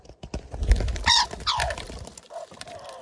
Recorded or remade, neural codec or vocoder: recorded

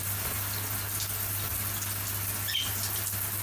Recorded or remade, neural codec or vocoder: recorded